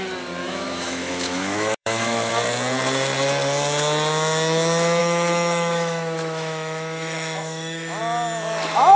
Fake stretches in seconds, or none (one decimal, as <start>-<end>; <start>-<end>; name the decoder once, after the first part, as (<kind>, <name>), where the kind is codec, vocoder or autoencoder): 0.4-2.3 (autoencoder, DAC-VAE); 5.0-8.0